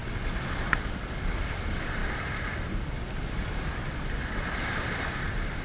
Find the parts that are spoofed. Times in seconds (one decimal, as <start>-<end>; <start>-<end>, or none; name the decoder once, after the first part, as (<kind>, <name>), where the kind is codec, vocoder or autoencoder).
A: 1.1-5.6 (vocoder, BigVGAN v2)